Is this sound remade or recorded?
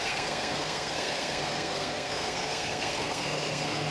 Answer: remade